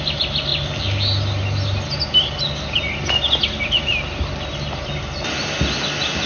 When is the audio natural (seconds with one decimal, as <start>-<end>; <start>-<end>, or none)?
0.0-6.3